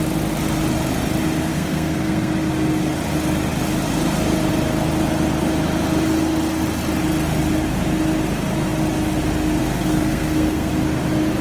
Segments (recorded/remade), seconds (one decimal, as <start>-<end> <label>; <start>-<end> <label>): 0.0-1.5 recorded; 1.5-2.3 remade; 2.3-9.6 recorded; 9.6-10.7 remade; 10.7-11.4 recorded